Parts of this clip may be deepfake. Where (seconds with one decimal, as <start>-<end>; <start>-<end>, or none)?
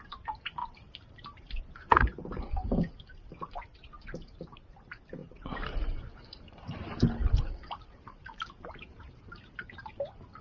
0.6-2.9; 5.2-6.7; 7.2-9.9